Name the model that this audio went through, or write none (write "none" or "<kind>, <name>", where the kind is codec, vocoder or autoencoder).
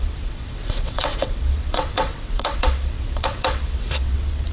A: vocoder, WaveNeXt